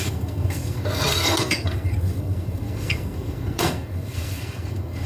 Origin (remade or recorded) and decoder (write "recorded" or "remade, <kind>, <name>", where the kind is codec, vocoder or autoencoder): remade, codec, SNAC